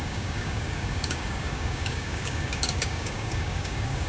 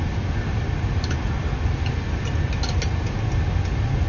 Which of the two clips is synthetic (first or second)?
first